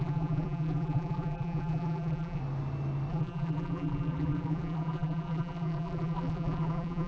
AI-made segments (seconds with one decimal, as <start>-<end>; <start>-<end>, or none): 0.0-2.4; 3.1-7.1